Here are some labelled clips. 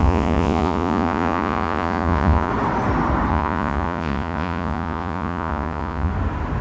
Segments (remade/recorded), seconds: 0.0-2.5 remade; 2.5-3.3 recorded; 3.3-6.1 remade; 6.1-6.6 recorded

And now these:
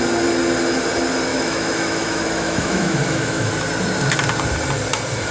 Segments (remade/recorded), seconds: 0.0-1.3 recorded; 1.3-3.5 remade; 3.5-5.3 recorded

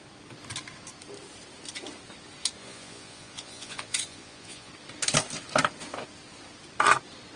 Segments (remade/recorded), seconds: 0.0-2.6 recorded; 2.6-4.7 remade; 4.7-7.4 recorded

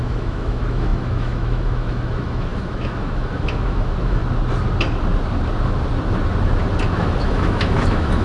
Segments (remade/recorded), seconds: 0.0-4.2 remade; 4.2-6.9 recorded; 6.9-8.2 remade

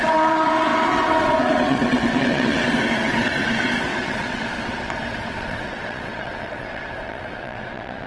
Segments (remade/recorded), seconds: 0.0-8.1 remade

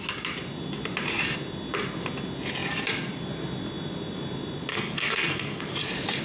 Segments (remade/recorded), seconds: 0.0-4.7 recorded; 4.7-5.6 remade; 5.6-6.2 recorded

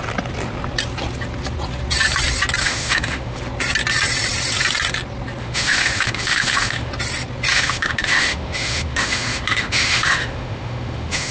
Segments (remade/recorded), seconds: 0.0-2.6 recorded; 2.6-3.4 remade; 3.4-5.4 recorded; 5.4-6.9 remade; 6.9-7.5 recorded; 7.5-11.3 remade